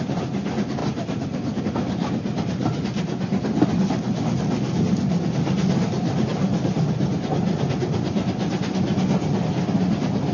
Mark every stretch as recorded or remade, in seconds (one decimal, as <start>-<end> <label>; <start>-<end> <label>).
0.0-0.8 recorded; 0.8-1.6 remade; 1.6-10.3 recorded